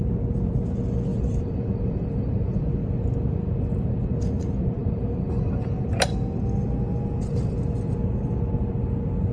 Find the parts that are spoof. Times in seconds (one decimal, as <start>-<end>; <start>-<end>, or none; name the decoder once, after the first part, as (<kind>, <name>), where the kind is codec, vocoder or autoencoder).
1.1-2.6 (vocoder, BigVGAN v2); 4.8-5.6